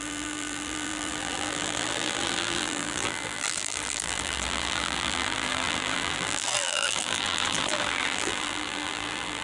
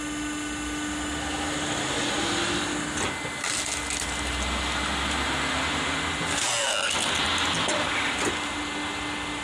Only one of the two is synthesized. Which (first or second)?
first